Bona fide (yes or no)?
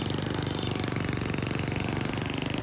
yes